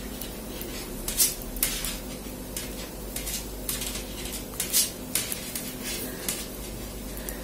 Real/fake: real